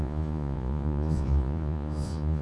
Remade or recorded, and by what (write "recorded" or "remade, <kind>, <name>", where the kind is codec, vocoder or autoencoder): remade, vocoder, Vocos